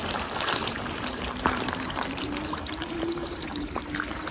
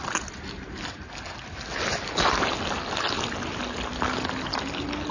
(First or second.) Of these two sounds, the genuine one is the second